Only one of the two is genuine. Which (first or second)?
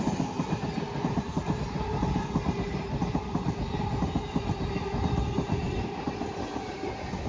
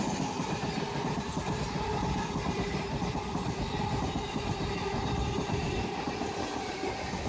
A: first